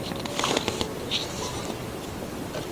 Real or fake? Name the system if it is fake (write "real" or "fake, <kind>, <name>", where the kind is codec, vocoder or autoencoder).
real